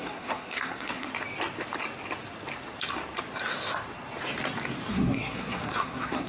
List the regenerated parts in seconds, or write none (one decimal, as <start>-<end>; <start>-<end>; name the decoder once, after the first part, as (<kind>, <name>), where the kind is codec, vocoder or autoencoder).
0.0-1.1 (codec, SNAC); 4.9-6.3